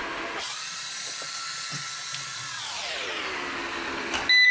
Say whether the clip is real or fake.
real